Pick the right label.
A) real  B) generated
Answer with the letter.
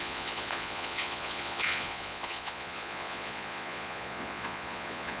B